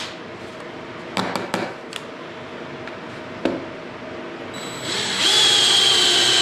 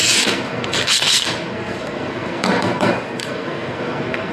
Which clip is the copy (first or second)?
second